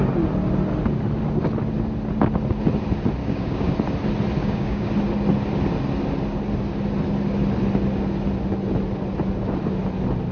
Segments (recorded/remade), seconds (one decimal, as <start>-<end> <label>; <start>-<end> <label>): 0.0-3.2 recorded; 3.2-3.7 remade; 3.7-4.4 recorded; 4.4-4.9 remade; 4.9-10.3 recorded